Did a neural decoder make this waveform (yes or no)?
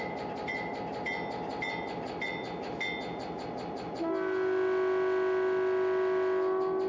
no